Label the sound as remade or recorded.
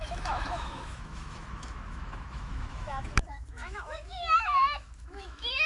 remade